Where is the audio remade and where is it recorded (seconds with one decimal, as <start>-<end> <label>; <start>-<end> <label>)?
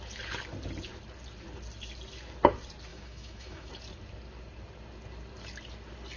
0.0-2.9 recorded; 2.9-3.7 remade; 3.7-6.2 recorded